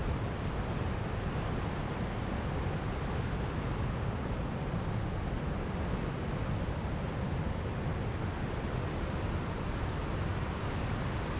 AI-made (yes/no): no